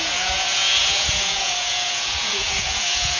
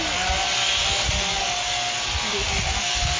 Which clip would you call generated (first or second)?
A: first